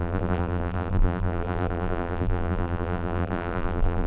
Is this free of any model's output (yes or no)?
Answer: no